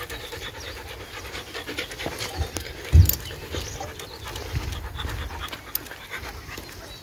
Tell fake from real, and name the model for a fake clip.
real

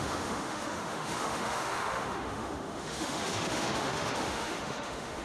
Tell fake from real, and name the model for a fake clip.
fake, autoencoder, DAC-VAE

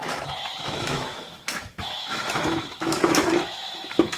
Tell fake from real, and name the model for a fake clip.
fake, autoencoder, DAC-VAE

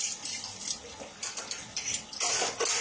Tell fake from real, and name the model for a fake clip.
real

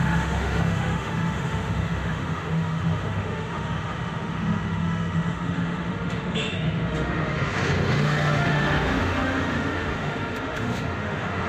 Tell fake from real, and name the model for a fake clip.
fake, autoencoder, DAC-VAE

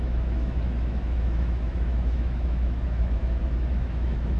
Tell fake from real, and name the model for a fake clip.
fake, autoencoder, DAC-VAE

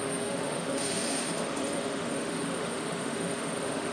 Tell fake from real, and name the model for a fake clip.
fake, autoencoder, DAC-VAE